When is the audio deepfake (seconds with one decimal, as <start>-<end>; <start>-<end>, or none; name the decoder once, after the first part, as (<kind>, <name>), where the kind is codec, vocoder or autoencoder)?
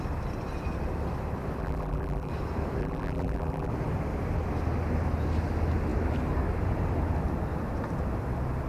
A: 1.6-2.3 (vocoder, BigVGAN v2); 2.8-3.7